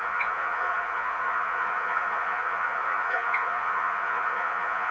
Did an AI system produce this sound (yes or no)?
yes